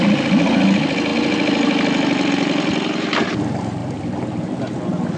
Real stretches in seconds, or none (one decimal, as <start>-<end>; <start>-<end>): 0.0-3.8; 4.4-5.2